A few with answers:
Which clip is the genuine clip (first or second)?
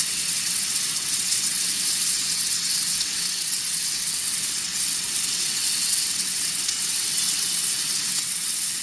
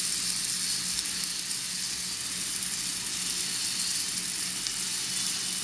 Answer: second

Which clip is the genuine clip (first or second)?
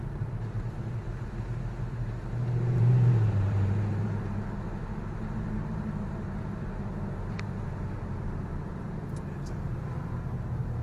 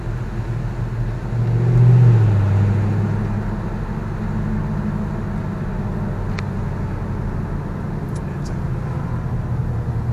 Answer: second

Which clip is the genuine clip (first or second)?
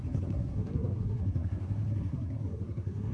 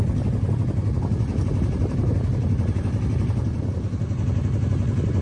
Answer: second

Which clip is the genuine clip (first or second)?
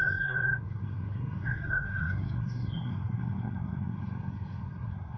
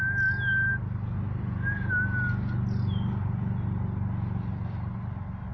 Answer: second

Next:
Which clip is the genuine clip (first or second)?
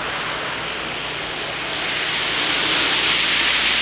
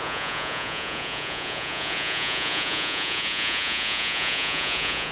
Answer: first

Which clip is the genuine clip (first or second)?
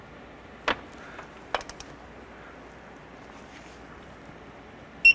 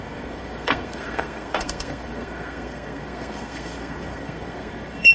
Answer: first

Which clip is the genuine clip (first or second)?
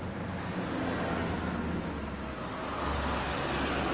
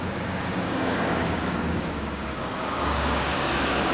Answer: first